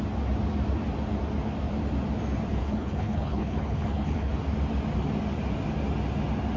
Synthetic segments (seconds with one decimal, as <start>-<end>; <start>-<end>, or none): 2.5-4.3